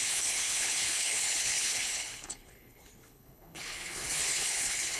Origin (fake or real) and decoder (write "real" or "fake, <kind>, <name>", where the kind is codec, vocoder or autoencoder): fake, codec, HILCodec